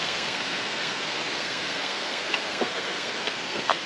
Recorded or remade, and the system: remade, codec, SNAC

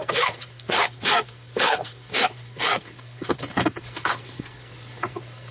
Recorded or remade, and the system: remade, codec, SNAC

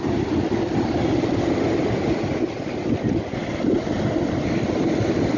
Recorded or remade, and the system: recorded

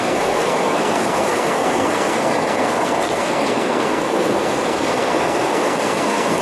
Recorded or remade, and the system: remade, codec, SNAC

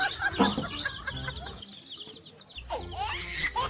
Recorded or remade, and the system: recorded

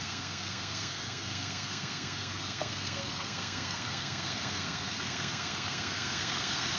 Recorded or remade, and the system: remade, codec, SNAC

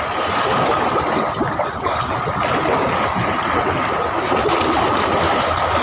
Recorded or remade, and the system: recorded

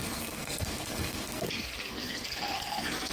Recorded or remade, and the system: remade, codec, SNAC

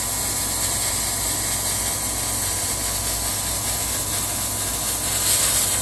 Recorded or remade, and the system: recorded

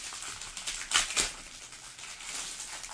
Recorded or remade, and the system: recorded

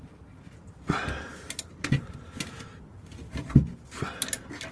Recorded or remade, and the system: recorded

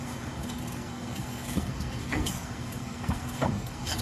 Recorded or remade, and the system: remade, codec, SNAC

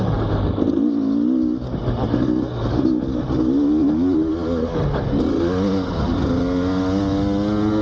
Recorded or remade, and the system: recorded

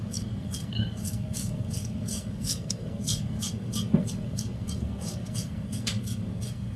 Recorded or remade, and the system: remade, codec, SNAC